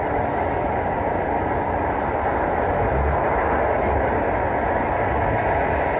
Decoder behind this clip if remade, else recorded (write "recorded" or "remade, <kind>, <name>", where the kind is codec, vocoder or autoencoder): recorded